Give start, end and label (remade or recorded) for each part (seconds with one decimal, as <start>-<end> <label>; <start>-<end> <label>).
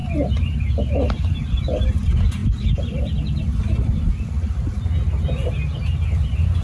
0.0-6.6 recorded